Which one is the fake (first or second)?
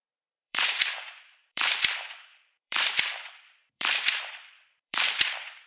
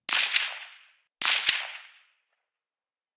first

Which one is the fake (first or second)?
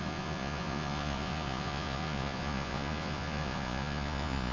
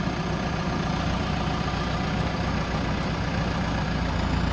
first